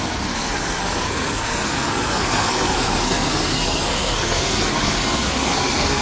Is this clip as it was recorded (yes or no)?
no